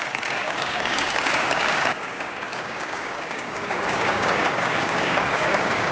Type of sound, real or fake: fake